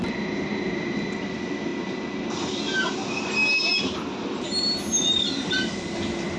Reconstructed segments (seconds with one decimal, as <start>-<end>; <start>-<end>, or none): none